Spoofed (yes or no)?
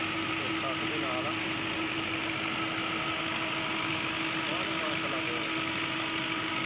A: no